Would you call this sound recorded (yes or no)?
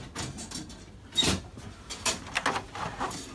yes